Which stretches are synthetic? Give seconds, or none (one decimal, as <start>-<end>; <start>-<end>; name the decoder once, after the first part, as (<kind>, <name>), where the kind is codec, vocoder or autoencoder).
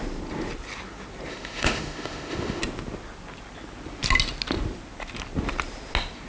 1.3-2.6 (autoencoder, DAC-VAE)